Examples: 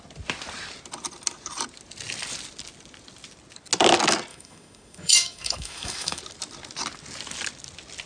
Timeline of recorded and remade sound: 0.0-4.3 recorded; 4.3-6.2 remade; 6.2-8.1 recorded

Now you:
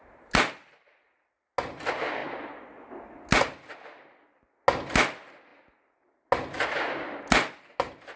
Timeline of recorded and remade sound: 0.0-0.9 remade; 0.9-8.2 recorded

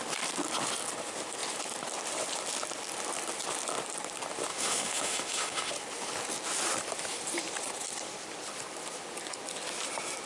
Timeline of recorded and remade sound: 0.0-4.5 recorded; 4.5-5.7 remade; 5.7-10.3 recorded

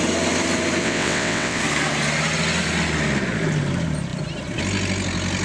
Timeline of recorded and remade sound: 0.0-0.8 recorded; 0.8-1.6 remade; 1.6-5.4 recorded

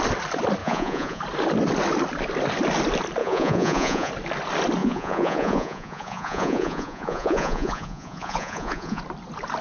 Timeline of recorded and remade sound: 0.0-0.6 recorded; 0.6-1.2 remade; 1.2-3.2 recorded; 3.2-4.1 remade; 4.1-4.8 recorded; 4.8-9.0 remade; 9.0-9.6 recorded

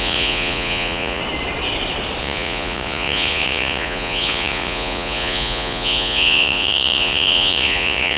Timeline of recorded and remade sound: 0.0-1.2 remade; 1.2-2.2 recorded; 2.2-8.2 remade